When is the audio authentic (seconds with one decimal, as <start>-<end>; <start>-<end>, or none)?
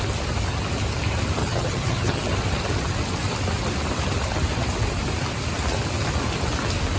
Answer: 0.0-1.4; 2.2-7.0